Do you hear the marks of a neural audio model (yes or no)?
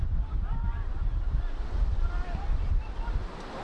no